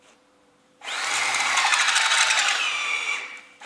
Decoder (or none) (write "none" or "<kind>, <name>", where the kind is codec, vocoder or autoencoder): vocoder, BigVGAN v2